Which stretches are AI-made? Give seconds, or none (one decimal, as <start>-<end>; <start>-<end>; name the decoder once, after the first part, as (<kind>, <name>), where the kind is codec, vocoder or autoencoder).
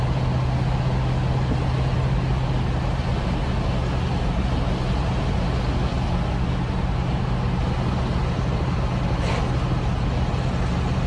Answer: none